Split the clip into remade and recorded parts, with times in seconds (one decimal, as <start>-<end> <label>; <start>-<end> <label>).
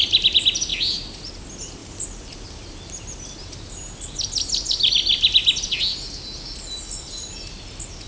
0.0-5.4 remade; 5.4-7.1 recorded; 7.1-8.1 remade